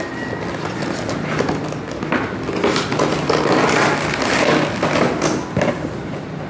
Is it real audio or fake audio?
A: real